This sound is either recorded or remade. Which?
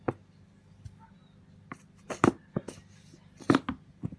recorded